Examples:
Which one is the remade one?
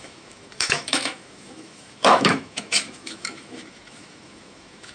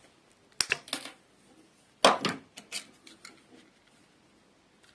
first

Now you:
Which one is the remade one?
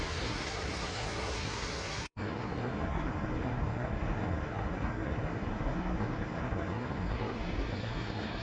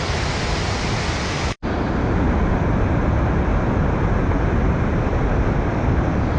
first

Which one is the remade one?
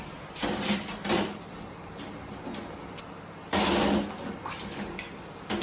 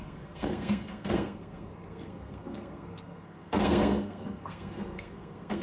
second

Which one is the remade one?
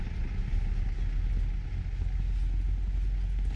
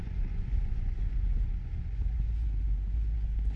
second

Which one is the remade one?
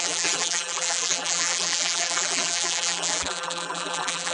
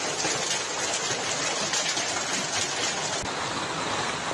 first